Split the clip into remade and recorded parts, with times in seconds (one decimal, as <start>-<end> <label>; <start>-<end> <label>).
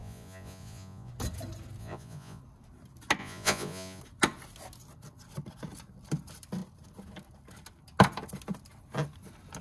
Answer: 0.0-1.1 remade; 1.1-1.8 recorded; 1.8-2.4 remade; 2.4-3.2 recorded; 3.2-4.0 remade; 4.0-9.6 recorded